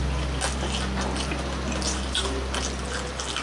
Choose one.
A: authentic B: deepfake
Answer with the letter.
A